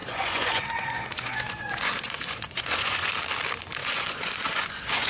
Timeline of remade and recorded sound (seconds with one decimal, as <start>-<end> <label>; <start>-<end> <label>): 0.0-3.1 remade; 3.1-3.8 recorded; 3.8-5.1 remade